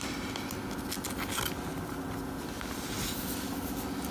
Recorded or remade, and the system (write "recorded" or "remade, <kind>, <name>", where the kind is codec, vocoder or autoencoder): recorded